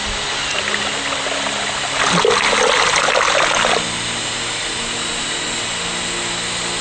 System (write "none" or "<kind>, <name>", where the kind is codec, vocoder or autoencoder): none